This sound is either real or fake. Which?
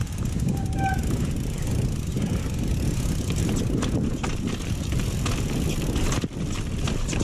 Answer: real